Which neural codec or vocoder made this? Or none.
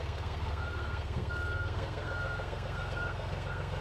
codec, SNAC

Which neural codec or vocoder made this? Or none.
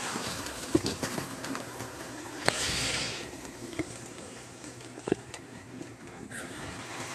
codec, SNAC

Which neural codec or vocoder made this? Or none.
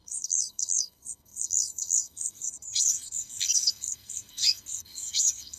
codec, SNAC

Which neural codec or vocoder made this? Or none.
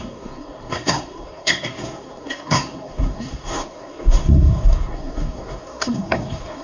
codec, SNAC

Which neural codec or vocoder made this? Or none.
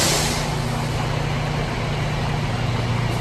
none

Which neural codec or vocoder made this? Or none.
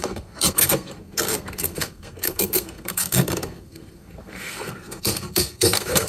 codec, SNAC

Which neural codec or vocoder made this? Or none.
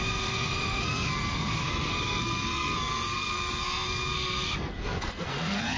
codec, SNAC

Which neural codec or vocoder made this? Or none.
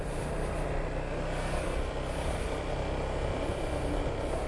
none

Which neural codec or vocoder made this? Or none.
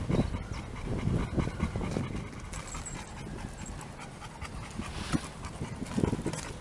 none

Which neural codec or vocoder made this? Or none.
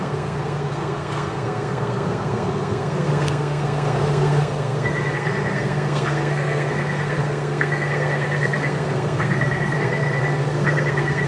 codec, SNAC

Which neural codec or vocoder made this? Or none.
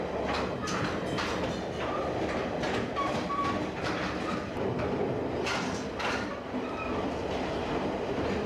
none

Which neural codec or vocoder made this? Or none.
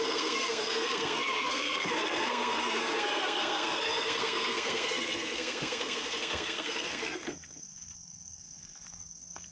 codec, SNAC